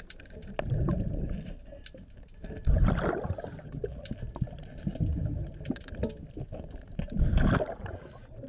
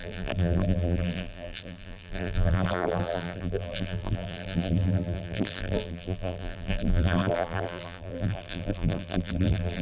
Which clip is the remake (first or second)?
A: second